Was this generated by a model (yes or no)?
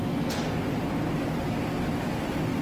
no